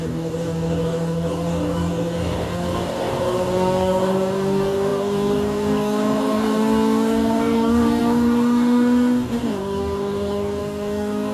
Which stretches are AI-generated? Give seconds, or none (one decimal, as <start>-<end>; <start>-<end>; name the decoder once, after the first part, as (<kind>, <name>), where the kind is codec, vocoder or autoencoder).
0.0-11.3 (codec, DAC)